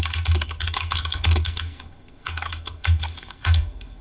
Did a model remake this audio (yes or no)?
yes